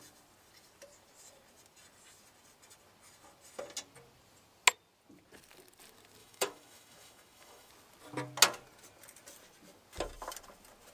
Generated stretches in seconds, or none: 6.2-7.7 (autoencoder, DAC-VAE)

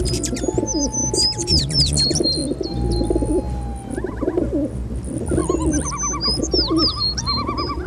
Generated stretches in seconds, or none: 0.0-2.4 (vocoder, BigVGAN v2); 3.3-5.4; 6.9-7.9

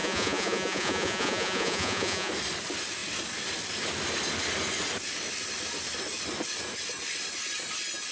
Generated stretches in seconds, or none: 0.0-2.3 (vocoder, Vocos)

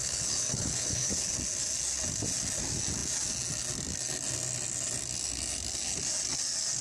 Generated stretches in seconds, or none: 0.0-1.4 (codec, HILCodec)

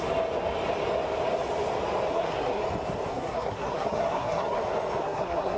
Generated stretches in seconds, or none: 2.1-2.6 (codec, SNAC); 3.1-4.6; 5.0-5.6